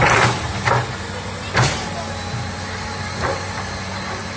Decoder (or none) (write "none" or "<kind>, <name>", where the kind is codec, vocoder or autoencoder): none